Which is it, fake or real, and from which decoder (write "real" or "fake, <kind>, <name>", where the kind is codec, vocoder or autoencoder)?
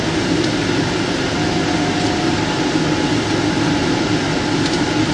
real